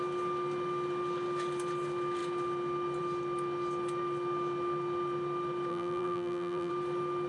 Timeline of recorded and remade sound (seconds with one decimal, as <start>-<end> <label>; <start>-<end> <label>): 0.0-5.7 recorded; 5.7-6.7 remade; 6.7-7.3 recorded